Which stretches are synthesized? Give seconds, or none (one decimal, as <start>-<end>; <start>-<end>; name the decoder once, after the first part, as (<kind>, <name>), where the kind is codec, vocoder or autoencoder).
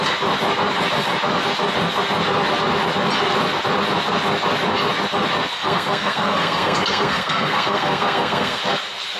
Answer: 5.5-8.6 (codec, SNAC)